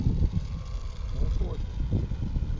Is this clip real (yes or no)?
yes